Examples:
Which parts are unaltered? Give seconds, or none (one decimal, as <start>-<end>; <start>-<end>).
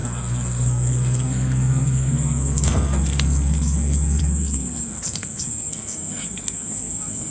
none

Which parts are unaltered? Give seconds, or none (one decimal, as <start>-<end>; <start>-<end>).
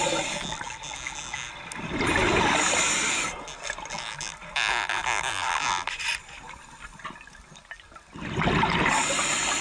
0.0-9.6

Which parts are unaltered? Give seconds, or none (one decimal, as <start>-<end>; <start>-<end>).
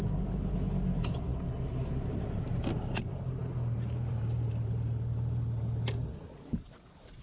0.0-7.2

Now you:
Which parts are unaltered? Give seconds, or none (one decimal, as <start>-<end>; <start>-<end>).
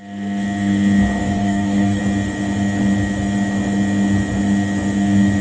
0.0-1.2; 2.0-5.4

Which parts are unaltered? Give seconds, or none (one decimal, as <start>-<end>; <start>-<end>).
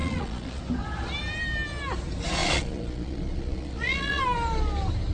0.6-2.4; 4.2-5.1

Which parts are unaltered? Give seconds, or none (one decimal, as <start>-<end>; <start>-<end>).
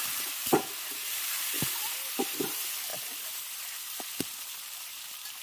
0.4-0.9; 2.9-3.5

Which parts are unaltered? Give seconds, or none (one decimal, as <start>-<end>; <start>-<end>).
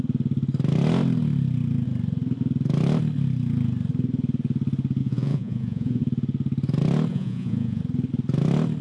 0.0-5.0; 6.0-7.1; 7.8-8.8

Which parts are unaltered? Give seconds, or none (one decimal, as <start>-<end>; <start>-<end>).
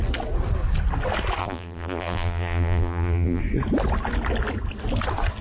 0.0-1.4; 3.4-5.4